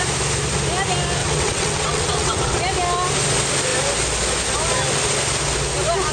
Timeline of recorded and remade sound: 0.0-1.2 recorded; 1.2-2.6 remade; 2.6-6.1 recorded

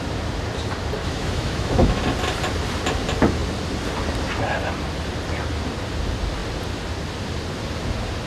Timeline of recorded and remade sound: 0.0-1.0 recorded; 1.0-2.0 remade; 2.0-8.3 recorded

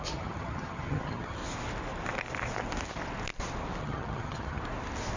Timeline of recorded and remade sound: 0.0-1.4 remade; 1.4-3.8 recorded; 3.8-4.6 remade; 4.6-5.2 recorded

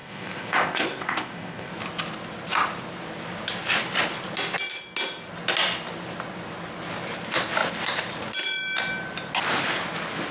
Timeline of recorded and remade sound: 0.0-1.7 remade; 1.7-10.3 recorded

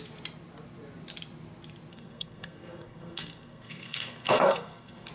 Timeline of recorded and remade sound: 0.0-1.9 recorded; 1.9-5.1 remade